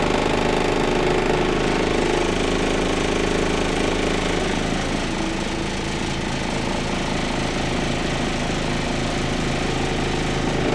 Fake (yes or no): no